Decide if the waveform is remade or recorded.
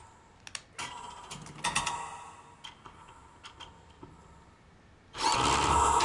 recorded